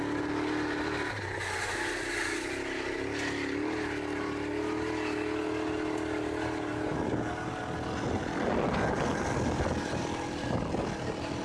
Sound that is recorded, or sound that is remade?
recorded